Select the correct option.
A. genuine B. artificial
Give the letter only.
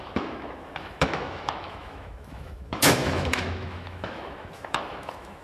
B